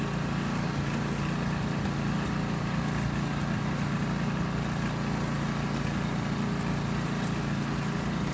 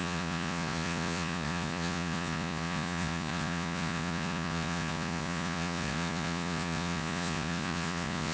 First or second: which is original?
first